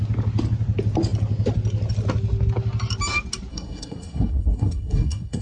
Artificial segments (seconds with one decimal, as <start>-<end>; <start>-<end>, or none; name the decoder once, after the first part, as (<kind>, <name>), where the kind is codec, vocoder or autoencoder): 3.5-5.4 (codec, SNAC)